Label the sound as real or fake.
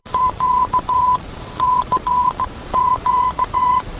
fake